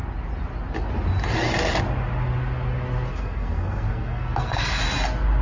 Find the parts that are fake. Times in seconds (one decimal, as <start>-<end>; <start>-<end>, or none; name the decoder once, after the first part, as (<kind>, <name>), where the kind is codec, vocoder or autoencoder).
3.1-4.8 (codec, SNAC)